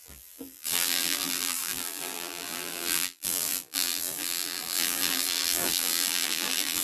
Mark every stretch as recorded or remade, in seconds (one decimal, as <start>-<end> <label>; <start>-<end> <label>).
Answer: 0.0-6.8 remade